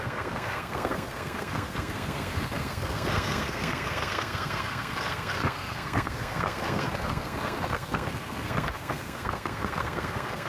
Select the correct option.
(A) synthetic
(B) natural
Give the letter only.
A